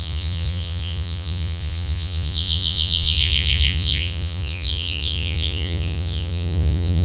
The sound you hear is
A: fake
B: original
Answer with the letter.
A